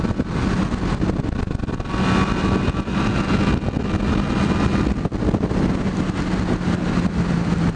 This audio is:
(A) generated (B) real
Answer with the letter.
B